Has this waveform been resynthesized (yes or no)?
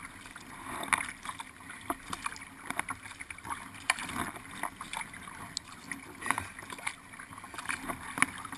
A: no